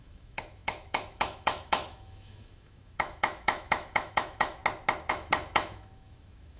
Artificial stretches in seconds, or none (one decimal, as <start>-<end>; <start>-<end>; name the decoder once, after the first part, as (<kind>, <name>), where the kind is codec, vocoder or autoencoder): 0.0-4.6 (autoencoder, DAC-VAE); 5.1-6.6